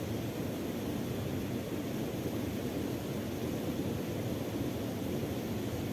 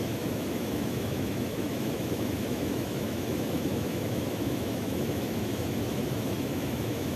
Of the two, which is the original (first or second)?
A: first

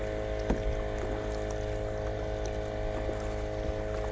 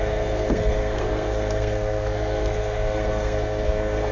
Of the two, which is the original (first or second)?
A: first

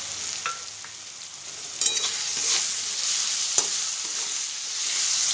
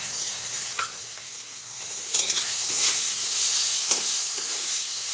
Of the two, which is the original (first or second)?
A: first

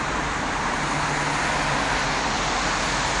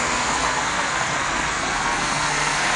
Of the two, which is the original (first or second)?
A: first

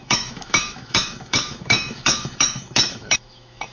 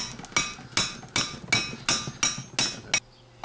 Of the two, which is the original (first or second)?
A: second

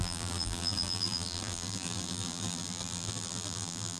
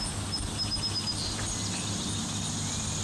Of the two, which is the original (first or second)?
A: second